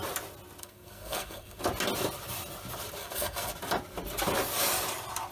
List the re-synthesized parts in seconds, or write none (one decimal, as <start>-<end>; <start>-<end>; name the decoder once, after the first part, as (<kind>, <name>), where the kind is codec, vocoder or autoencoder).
0.6-1.6 (codec, SNAC); 3.0-3.5